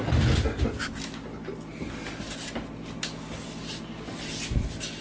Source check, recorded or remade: recorded